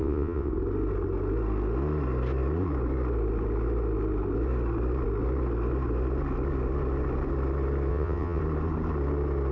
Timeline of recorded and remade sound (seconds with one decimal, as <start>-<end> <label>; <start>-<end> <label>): 0.0-0.5 remade; 0.5-7.9 recorded; 7.9-8.4 remade; 8.4-9.5 recorded